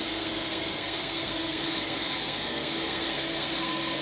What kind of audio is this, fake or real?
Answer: fake